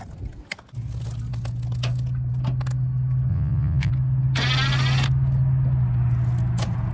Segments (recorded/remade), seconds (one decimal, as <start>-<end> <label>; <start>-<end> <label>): 0.0-3.3 recorded; 3.3-3.9 remade; 3.9-6.9 recorded